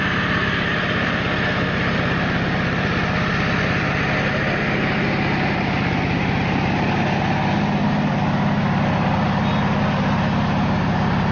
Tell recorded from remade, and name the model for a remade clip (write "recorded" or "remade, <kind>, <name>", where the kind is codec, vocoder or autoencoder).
recorded